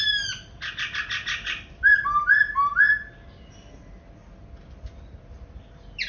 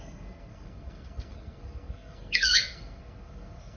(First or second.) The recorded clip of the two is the first